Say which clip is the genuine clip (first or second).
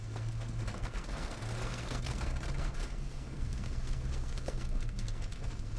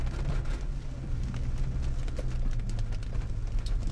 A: second